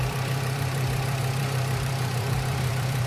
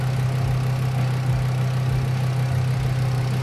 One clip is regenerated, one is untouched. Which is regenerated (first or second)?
first